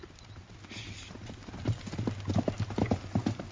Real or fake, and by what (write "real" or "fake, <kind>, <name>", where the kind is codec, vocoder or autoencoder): real